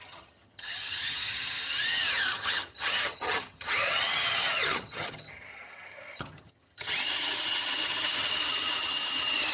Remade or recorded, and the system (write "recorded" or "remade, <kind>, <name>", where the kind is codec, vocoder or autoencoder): remade, vocoder, HiFi-GAN